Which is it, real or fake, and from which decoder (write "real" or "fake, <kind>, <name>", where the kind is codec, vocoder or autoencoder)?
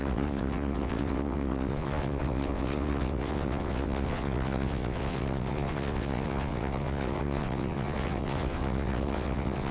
fake, vocoder, WaveNeXt